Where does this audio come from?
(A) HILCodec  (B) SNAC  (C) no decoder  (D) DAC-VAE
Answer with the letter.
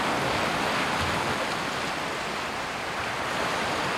C